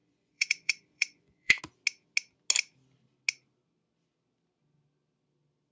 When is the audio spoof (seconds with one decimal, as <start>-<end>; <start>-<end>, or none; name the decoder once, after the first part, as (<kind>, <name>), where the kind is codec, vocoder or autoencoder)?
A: 0.0-1.6 (vocoder, Vocos)